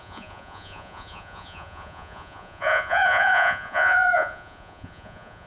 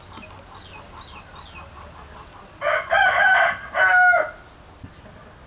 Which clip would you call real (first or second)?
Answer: second